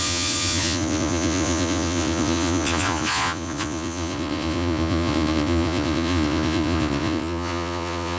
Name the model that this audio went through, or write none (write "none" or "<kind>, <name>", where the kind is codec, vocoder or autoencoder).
vocoder, Vocos